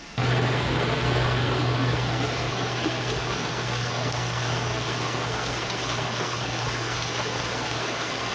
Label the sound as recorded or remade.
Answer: remade